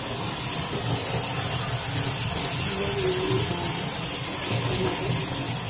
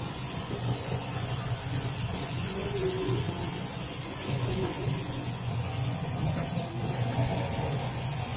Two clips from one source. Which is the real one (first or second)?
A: first